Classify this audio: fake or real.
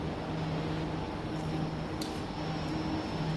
real